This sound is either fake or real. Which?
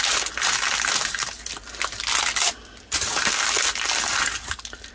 real